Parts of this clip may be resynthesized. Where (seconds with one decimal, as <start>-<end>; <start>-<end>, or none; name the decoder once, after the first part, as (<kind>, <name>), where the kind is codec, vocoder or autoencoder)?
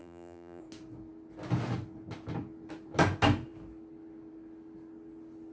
0.0-0.6 (vocoder, BigVGAN v2)